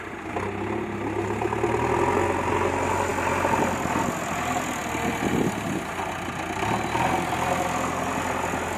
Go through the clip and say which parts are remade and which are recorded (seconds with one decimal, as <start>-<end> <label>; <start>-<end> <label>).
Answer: 0.0-8.8 recorded